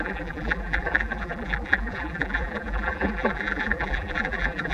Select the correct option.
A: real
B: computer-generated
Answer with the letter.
B